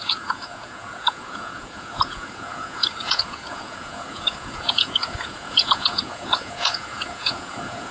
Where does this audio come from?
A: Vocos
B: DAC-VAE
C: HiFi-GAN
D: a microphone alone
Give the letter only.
A